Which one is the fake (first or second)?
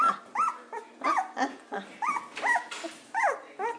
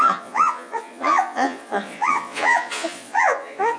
second